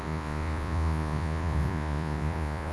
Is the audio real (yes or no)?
no